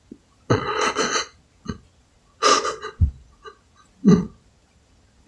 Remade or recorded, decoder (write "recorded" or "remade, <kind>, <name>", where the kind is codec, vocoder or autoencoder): remade, vocoder, Vocos